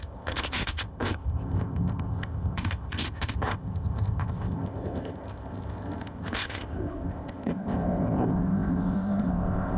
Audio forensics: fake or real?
fake